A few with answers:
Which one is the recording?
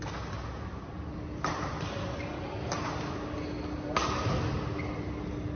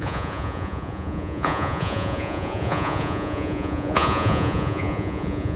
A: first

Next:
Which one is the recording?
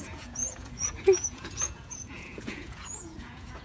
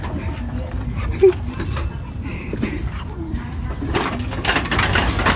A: second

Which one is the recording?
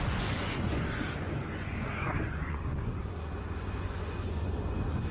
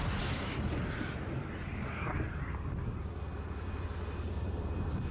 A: second